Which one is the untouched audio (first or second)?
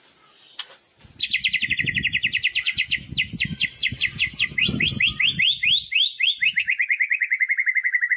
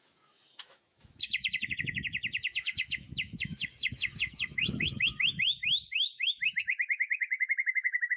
first